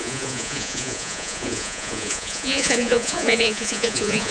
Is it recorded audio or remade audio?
remade